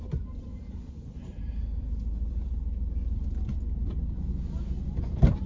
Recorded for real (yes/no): no